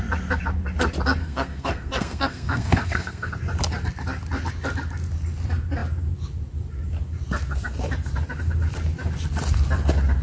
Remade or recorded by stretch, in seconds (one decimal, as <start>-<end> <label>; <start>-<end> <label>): 0.0-1.2 recorded; 1.2-3.3 remade; 3.3-10.2 recorded